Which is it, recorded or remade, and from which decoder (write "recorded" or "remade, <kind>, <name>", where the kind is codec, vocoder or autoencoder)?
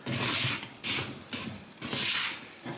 recorded